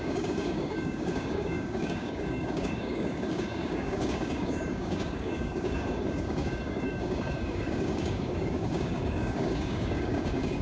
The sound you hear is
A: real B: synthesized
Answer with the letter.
B